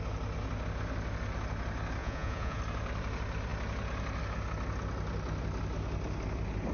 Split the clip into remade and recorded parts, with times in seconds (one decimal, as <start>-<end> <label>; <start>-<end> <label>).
0.0-2.0 recorded; 2.0-2.6 remade; 2.6-6.7 recorded